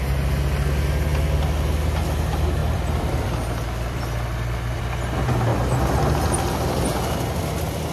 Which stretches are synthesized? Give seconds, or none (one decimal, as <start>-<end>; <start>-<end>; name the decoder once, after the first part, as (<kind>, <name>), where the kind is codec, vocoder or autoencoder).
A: 2.6-4.8 (vocoder, BigVGAN v2)